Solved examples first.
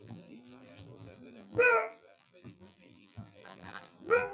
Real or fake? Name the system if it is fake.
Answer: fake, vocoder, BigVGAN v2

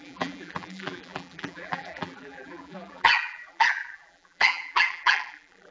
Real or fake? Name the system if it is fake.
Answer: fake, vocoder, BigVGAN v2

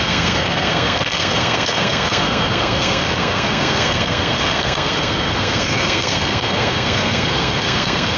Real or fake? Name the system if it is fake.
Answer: fake, codec, SNAC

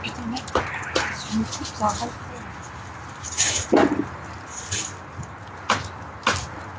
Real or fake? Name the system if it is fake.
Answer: real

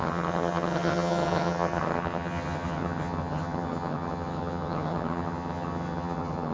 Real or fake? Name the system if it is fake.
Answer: fake, vocoder, HiFi-GAN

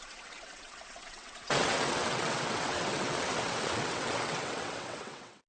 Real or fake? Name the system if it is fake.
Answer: fake, vocoder, WaveNeXt